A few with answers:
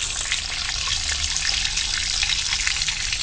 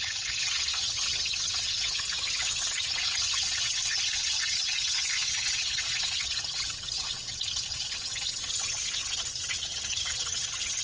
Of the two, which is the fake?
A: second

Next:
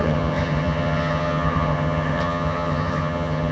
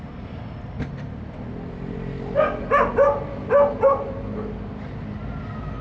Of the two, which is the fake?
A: first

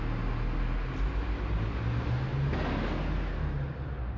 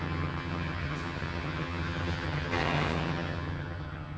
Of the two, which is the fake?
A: second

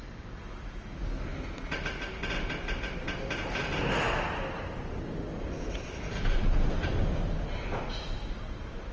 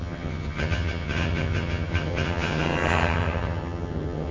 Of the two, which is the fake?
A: second